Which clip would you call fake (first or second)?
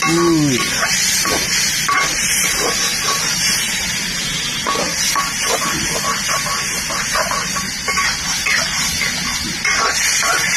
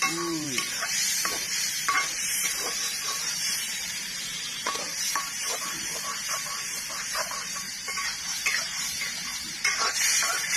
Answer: second